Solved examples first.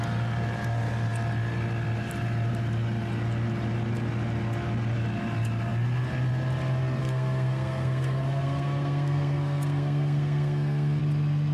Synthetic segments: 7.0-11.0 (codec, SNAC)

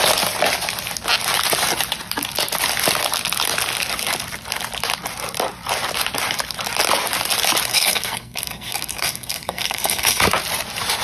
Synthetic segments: 7.7-10.2 (codec, SNAC)

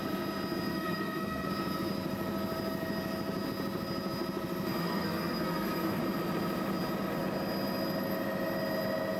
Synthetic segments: 0.7-1.5 (codec, SNAC); 4.8-6.0

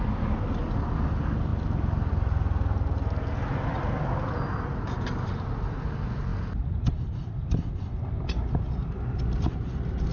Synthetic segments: 8.8-10.1 (vocoder, BigVGAN v2)

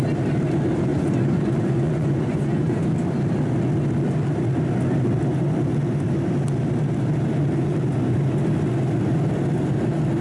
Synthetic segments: 0.9-2.8 (vocoder, Vocos)